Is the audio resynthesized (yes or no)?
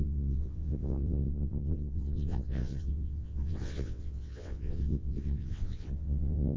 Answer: yes